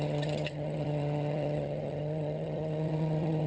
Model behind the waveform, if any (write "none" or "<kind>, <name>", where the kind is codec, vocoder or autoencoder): vocoder, HiFi-GAN